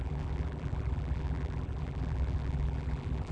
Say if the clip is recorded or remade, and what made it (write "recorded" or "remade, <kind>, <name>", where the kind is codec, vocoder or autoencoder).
remade, vocoder, BigVGAN v2